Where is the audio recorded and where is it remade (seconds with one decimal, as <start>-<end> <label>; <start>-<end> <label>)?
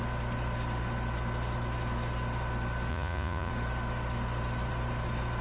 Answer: 0.0-2.9 recorded; 2.9-3.5 remade; 3.5-5.4 recorded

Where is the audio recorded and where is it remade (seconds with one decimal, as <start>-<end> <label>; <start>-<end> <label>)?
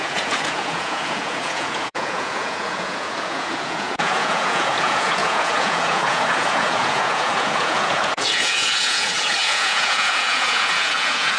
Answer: 0.0-11.4 remade